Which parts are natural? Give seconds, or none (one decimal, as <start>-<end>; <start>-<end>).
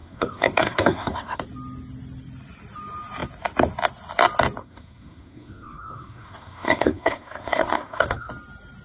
1.4-4.6; 8.3-8.8